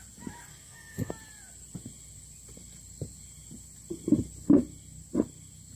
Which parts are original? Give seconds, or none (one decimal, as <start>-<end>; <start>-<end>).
0.0-0.5; 1.1-5.8